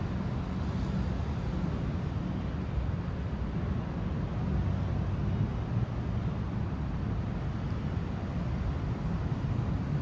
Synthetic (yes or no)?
no